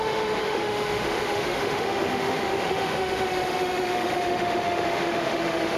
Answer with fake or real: fake